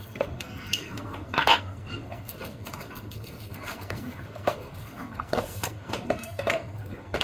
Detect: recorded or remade remade